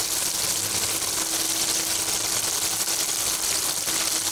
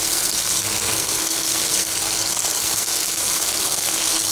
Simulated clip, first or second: second